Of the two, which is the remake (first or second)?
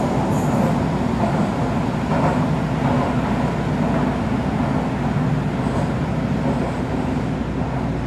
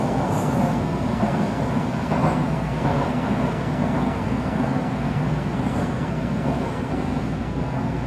second